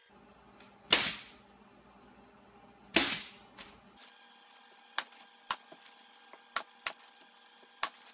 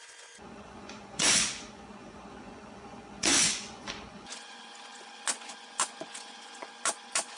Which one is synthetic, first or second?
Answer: second